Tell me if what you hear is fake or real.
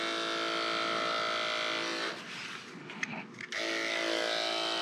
real